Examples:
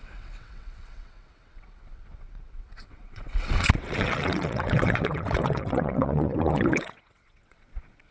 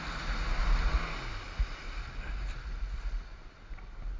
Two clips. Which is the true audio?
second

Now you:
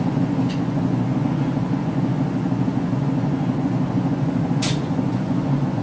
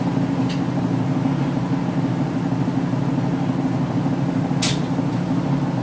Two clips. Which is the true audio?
second